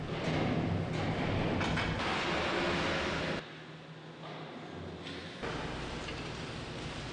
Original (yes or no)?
yes